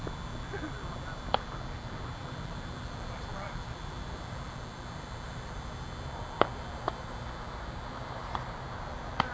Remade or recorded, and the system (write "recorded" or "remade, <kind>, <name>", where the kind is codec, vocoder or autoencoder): remade, vocoder, BigVGAN v2